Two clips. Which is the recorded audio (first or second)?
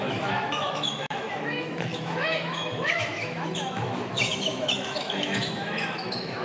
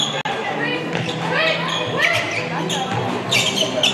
second